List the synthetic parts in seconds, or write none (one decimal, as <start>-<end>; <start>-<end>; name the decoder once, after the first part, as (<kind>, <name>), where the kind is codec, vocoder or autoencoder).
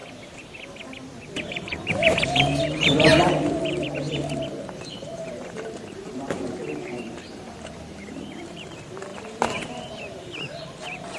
1.3-11.2 (vocoder, BigVGAN v2)